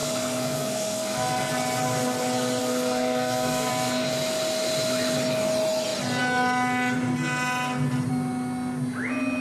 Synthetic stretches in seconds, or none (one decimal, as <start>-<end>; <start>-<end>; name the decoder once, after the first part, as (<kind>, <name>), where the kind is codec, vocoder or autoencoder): 0.0-1.5 (codec, SNAC); 2.6-3.7